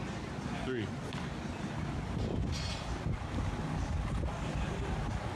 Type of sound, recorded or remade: recorded